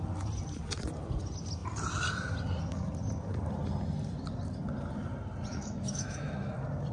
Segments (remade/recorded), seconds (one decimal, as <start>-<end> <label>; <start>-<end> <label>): 0.0-5.5 recorded; 5.5-6.5 remade; 6.5-6.9 recorded